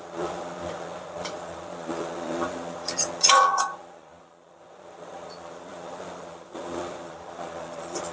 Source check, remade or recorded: remade